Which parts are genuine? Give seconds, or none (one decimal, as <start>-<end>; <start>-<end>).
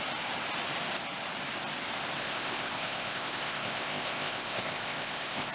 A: 0.0-2.2